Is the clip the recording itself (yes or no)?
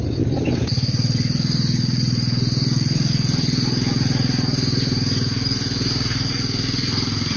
yes